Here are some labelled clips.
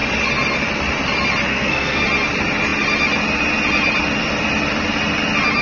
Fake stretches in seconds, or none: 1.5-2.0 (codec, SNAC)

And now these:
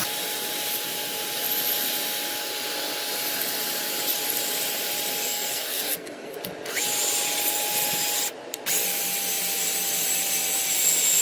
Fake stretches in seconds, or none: 5.2-6.4 (codec, SNAC)

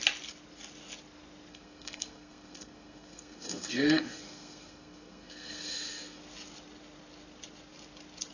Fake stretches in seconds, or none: 1.5-6.2 (codec, SNAC)

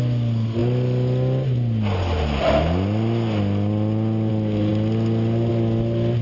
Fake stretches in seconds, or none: none

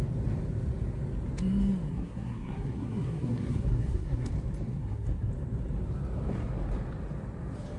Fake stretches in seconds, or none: 1.9-4.3 (codec, SNAC); 4.7-5.3

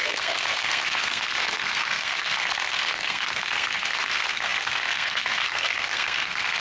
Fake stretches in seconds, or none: 0.0-6.6 (codec, SNAC)